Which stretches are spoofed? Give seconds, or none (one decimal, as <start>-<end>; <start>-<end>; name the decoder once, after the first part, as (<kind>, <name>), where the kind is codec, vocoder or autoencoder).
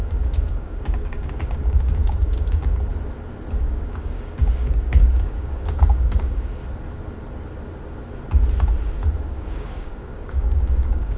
0.0-2.9 (codec, DAC); 3.6-6.6; 9.2-11.2